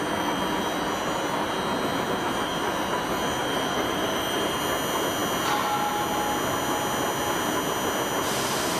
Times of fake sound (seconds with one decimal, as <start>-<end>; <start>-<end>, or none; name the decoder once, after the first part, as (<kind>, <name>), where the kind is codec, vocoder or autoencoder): 3.4-4.6 (vocoder, BigVGAN v2)